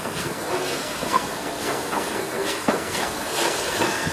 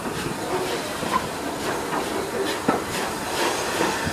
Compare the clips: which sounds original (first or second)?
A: second